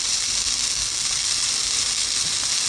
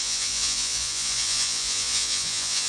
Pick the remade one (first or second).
second